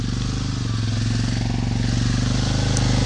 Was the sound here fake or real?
real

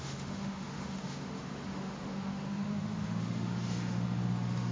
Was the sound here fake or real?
fake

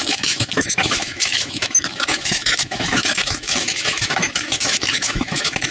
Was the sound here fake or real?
fake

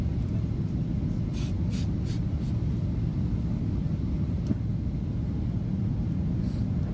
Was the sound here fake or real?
real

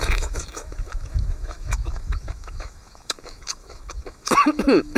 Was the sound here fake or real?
fake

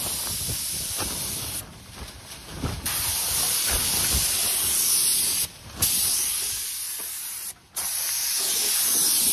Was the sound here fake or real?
real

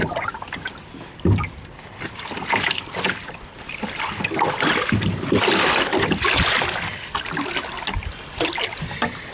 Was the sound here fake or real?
real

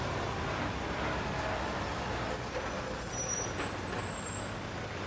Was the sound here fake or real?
real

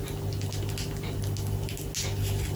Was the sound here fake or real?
real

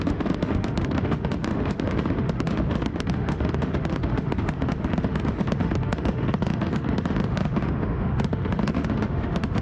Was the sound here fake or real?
fake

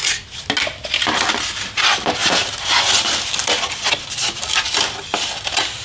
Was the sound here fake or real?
real